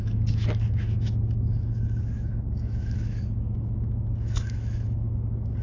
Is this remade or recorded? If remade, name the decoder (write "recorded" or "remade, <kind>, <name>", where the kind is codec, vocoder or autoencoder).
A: remade, autoencoder, DAC-VAE